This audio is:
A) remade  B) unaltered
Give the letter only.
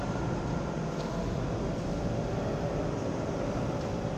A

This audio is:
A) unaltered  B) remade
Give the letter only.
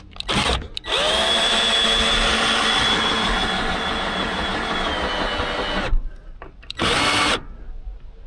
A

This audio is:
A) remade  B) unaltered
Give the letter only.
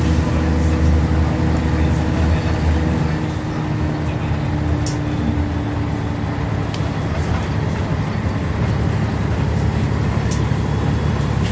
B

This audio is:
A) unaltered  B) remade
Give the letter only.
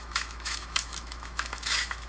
B